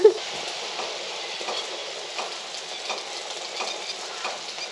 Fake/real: real